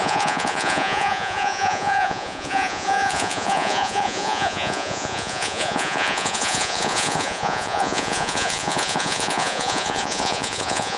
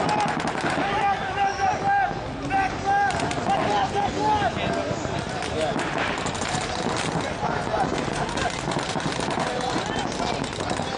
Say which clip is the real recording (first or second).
second